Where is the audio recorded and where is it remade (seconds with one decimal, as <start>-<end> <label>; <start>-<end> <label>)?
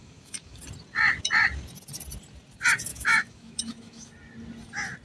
0.0-0.6 remade; 0.6-2.9 recorded; 2.9-4.1 remade; 4.1-5.0 recorded